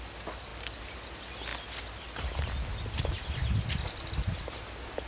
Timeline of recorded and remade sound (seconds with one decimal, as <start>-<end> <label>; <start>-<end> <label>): 0.0-5.1 recorded